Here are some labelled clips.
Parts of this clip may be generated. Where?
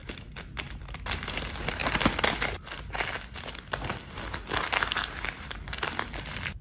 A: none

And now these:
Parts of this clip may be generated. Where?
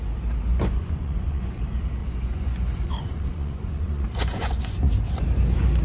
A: 0.6-1.6; 2.0-4.9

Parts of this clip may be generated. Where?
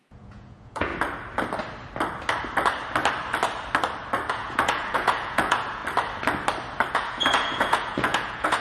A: 0.0-0.9; 4.3-5.8; 6.9-8.6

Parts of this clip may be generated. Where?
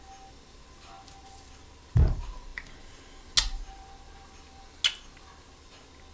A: none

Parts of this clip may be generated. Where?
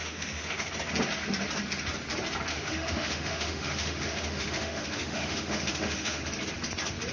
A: 0.0-0.7; 2.5-6.2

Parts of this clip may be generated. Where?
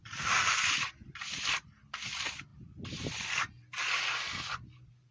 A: none